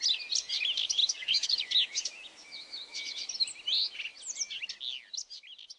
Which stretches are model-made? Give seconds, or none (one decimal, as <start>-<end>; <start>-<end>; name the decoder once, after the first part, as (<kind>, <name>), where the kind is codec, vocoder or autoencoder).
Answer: 1.0-3.3 (autoencoder, DAC-VAE)